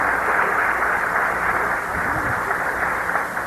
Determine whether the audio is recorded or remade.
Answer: recorded